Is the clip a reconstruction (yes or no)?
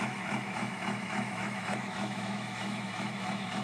yes